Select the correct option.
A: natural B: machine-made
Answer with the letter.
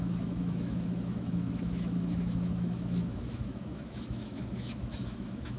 B